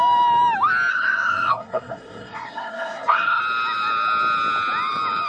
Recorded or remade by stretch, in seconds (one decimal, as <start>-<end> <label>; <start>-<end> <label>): 0.0-0.9 recorded; 0.9-3.4 remade; 3.4-5.3 recorded